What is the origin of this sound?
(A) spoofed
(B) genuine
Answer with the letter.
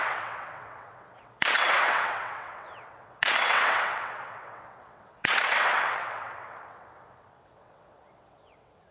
A